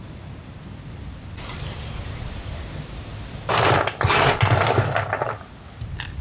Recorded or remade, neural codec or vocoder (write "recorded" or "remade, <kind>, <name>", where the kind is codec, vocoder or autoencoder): recorded